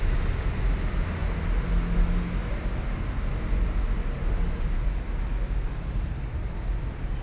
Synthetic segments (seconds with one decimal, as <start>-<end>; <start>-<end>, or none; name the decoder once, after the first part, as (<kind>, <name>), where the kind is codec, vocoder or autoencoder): none